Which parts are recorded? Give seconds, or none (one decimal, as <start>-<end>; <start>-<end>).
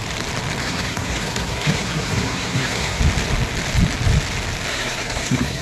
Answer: 0.0-0.6; 3.0-4.7